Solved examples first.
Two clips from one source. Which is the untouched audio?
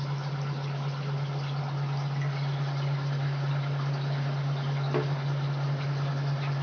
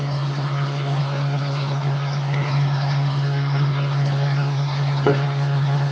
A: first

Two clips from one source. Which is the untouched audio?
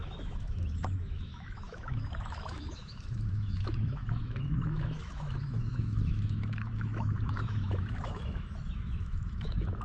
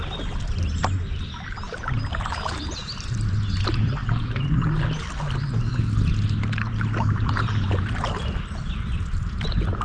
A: second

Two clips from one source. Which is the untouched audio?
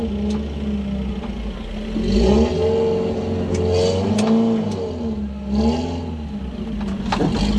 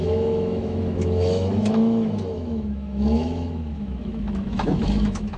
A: first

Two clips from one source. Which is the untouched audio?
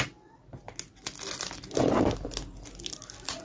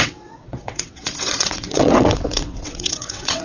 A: first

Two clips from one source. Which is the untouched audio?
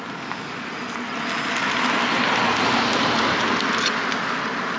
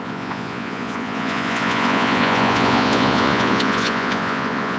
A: first